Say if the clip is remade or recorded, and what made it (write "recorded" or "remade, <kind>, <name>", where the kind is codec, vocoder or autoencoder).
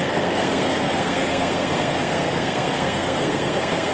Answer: remade, codec, SNAC